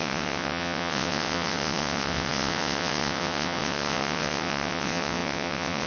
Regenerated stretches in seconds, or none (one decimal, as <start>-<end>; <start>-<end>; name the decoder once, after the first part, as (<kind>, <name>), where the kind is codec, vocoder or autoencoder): 0.0-5.9 (vocoder, WaveNeXt)